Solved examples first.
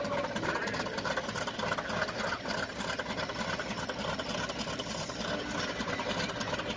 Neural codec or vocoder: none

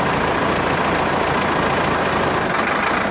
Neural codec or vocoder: none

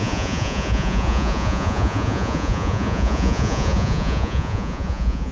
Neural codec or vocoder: vocoder, Vocos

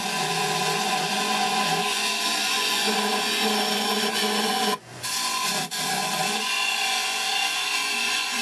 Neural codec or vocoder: vocoder, Vocos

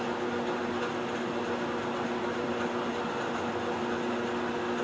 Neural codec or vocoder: none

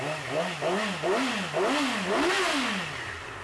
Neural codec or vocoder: none